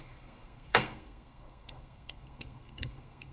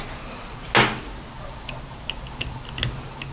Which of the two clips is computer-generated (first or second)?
first